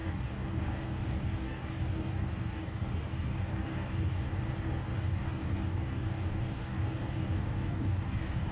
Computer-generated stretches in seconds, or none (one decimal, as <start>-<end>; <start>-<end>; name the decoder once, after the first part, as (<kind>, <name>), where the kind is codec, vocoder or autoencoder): 0.0-8.5 (codec, DAC)